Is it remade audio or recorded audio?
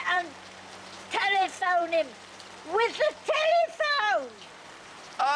remade